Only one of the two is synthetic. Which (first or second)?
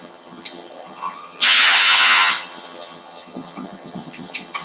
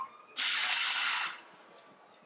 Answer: first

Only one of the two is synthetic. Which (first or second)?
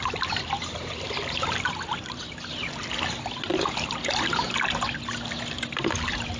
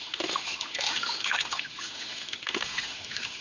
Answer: second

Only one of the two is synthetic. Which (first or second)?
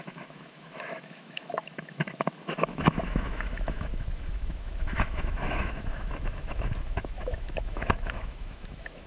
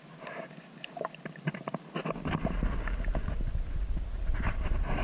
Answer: first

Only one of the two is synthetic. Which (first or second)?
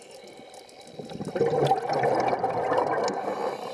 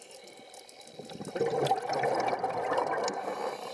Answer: second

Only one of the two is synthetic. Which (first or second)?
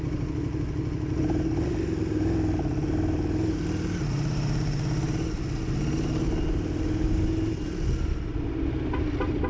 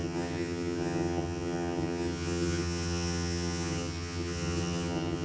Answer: second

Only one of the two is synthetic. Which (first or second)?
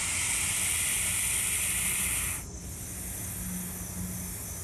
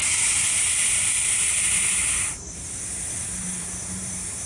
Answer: second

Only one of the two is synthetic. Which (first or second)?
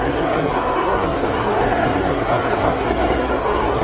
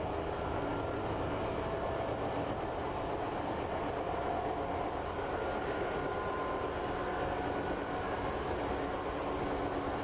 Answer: first